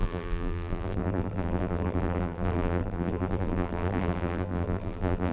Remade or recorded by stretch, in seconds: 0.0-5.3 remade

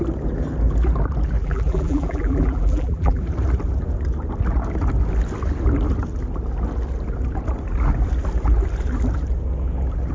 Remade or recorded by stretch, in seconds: 0.0-1.4 recorded; 1.4-3.2 remade; 3.2-10.1 recorded

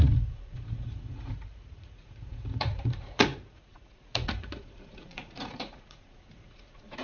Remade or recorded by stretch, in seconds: 0.0-7.0 remade

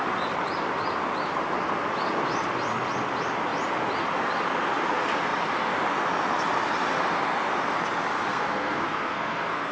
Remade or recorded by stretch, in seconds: 0.0-8.3 recorded; 8.3-9.7 remade

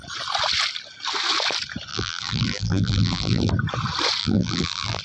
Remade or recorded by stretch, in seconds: 0.0-1.9 recorded; 1.9-3.5 remade; 3.5-4.2 recorded; 4.2-5.0 remade

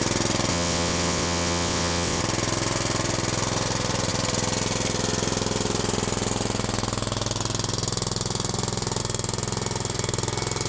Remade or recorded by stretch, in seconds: 0.0-0.5 recorded; 0.5-2.2 remade; 2.2-10.7 recorded

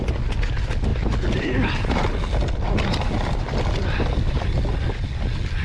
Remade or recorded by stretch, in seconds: 0.0-5.6 recorded